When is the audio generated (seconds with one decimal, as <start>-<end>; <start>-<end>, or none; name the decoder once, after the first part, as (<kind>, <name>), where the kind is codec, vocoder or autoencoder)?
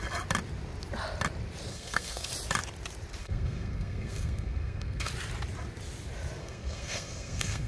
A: 1.7-2.3 (codec, SNAC); 3.2-5.1; 6.4-7.7